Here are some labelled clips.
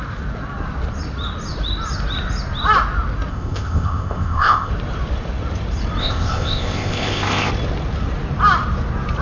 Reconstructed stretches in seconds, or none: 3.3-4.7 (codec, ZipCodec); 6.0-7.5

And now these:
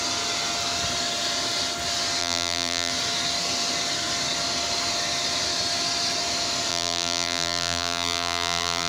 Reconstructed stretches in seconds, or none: 2.2-2.9 (vocoder, BigVGAN v2); 6.7-8.9

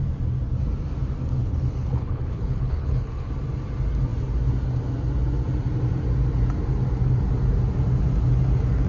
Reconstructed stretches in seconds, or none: 1.4-3.3 (codec, HILCodec)

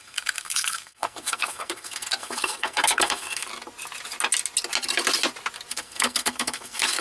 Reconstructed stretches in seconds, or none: 0.0-3.5 (codec, SNAC); 5.7-7.0

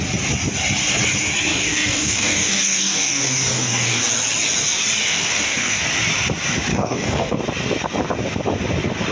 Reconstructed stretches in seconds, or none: 1.5-4.0 (codec, DAC); 5.0-5.8; 6.7-7.4

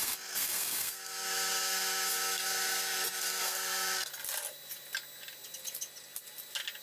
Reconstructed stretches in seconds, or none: 0.0-4.1 (codec, SNAC)